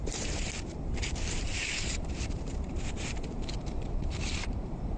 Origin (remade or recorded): remade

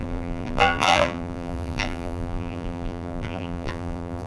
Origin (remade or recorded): remade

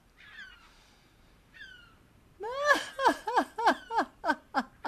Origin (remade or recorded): remade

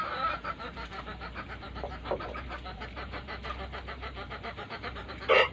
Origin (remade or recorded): remade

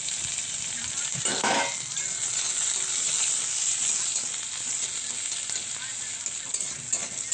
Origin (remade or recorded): recorded